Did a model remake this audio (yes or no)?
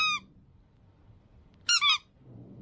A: no